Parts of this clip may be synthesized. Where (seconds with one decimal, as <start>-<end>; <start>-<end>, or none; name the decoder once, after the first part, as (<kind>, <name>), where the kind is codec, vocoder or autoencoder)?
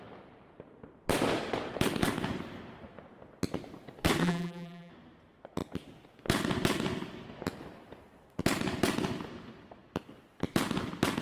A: 4.2-4.9 (vocoder, BigVGAN v2)